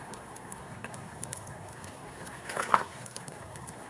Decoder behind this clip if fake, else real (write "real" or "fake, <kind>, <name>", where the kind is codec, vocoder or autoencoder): fake, codec, SNAC